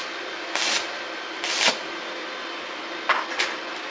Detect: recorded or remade recorded